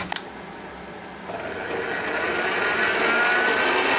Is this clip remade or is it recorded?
recorded